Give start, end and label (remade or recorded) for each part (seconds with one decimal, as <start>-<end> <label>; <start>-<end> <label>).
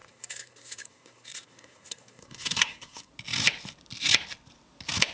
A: 0.0-3.1 remade; 3.1-5.1 recorded